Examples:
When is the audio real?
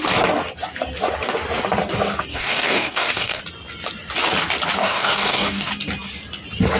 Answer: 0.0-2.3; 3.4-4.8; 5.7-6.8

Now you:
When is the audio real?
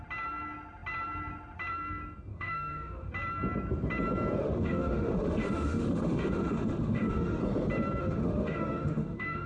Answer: 0.0-2.3; 3.1-4.4; 7.4-8.0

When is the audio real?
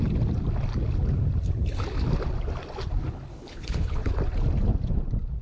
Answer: 0.0-3.3; 4.1-5.4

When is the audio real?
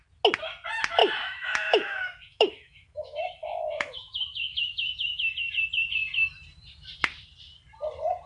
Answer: 0.0-1.0; 5.5-8.3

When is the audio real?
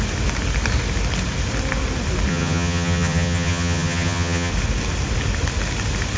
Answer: 0.0-2.3; 4.5-6.2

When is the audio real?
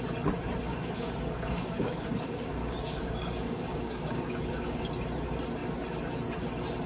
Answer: 0.0-0.7; 4.8-6.9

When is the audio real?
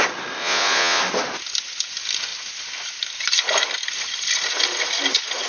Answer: 0.0-0.4; 1.0-5.5